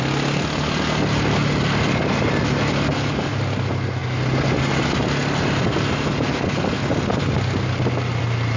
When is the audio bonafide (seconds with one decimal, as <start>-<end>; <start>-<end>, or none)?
0.0-8.6